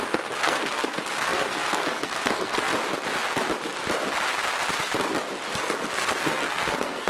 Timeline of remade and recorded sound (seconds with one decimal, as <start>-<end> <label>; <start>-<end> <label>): 0.0-2.7 remade; 2.7-5.6 recorded; 5.6-7.1 remade

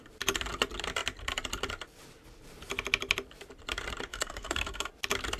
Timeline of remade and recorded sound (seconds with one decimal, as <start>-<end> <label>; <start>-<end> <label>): 0.0-4.1 recorded; 4.1-4.9 remade; 4.9-5.4 recorded

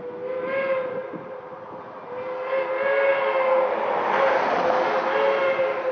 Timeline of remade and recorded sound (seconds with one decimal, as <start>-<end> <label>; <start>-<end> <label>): 0.0-5.9 recorded

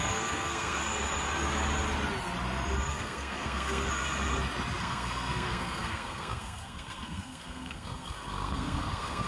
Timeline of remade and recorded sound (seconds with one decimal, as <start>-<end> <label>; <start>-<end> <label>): 0.0-0.8 remade; 0.8-2.9 recorded; 2.9-4.0 remade; 4.0-4.8 recorded; 4.8-9.3 remade

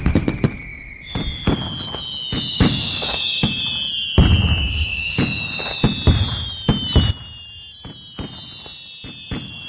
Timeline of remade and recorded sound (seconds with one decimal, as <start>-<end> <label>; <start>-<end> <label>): 0.0-2.5 recorded; 2.5-3.6 remade; 3.6-4.6 recorded; 4.6-5.2 remade; 5.2-9.7 recorded

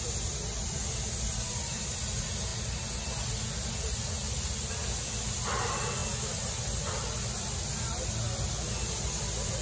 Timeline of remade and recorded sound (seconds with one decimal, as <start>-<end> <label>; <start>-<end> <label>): 0.0-9.6 recorded